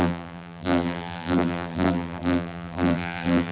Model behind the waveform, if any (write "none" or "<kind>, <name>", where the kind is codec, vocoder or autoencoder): vocoder, BigVGAN v2